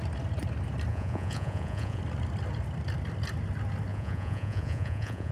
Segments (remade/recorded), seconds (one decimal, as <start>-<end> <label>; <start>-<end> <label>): 0.0-0.9 recorded; 0.9-2.0 remade; 2.0-3.9 recorded; 3.9-5.3 remade